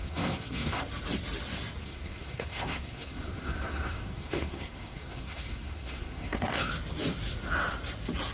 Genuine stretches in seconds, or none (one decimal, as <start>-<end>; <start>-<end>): 0.8-1.8; 6.7-8.3